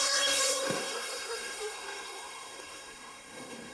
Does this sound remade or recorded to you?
remade